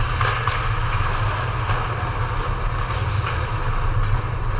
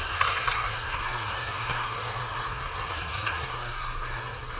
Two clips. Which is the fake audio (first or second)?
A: second